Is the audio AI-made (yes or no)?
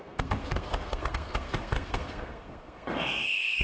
yes